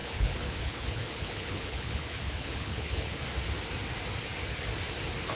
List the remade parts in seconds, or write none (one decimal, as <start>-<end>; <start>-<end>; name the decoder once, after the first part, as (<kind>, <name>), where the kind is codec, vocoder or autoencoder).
0.0-3.2 (codec, HILCodec)